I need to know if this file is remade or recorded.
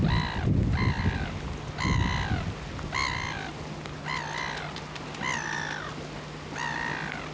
recorded